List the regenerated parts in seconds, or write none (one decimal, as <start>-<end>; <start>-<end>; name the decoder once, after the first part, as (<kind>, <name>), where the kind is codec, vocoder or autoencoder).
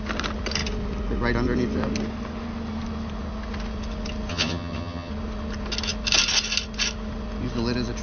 4.3-5.1 (vocoder, HiFi-GAN)